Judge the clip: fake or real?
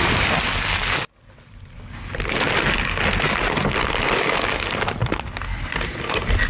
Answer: real